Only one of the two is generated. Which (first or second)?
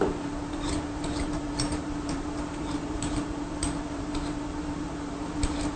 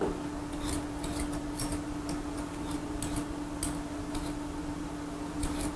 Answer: first